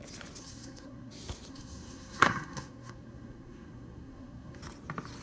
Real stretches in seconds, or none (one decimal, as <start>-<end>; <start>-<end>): 0.0-0.4; 1.1-1.5; 4.6-5.2

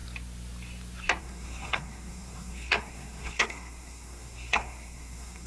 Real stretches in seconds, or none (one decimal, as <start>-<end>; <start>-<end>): 0.0-1.2

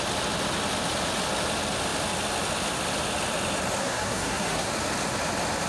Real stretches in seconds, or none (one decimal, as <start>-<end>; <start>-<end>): 0.0-3.8; 4.7-5.7

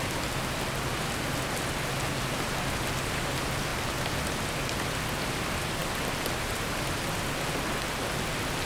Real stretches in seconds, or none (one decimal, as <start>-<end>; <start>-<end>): 0.0-8.7

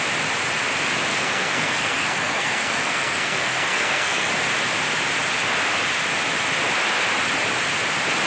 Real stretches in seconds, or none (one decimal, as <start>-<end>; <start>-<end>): 0.0-1.1; 4.3-8.3

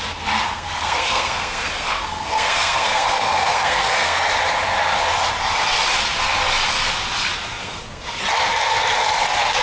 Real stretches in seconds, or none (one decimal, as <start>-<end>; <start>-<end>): 0.0-0.5; 4.3-7.6; 8.2-9.6